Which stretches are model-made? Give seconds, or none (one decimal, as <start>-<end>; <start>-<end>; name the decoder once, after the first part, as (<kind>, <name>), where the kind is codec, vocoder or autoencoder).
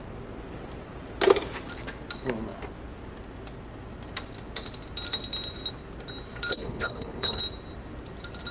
6.5-7.4 (codec, HILCodec)